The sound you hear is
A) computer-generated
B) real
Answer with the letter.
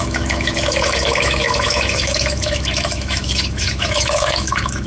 A